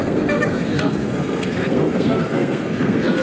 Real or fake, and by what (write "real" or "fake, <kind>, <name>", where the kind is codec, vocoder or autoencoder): fake, codec, SNAC